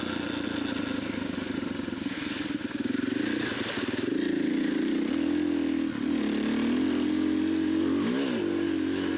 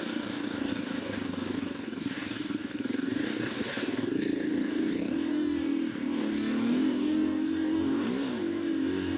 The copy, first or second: second